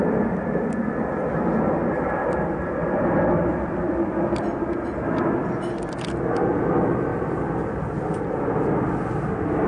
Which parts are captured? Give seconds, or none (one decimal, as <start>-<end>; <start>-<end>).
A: 7.1-9.7